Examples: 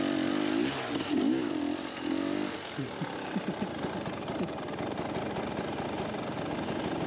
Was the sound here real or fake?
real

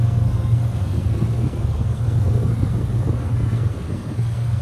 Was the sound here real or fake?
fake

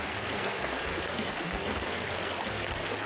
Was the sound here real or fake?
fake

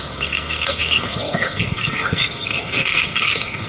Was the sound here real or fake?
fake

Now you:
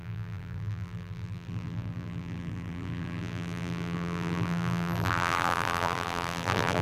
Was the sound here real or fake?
fake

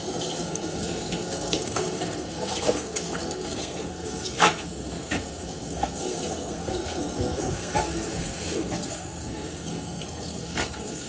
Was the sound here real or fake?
fake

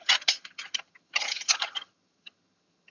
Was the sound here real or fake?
fake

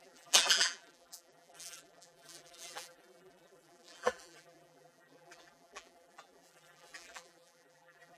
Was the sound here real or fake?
fake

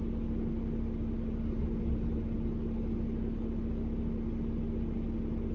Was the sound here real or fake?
real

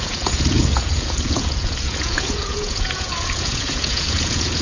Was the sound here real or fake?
fake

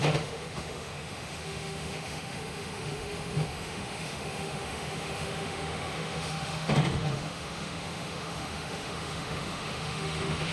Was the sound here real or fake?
fake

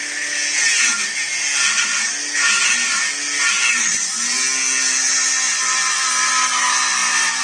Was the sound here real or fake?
real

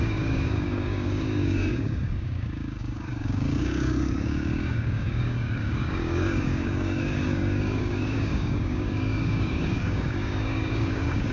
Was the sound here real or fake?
fake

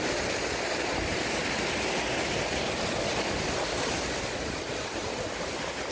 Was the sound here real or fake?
real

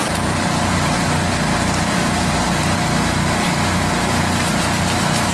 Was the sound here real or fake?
real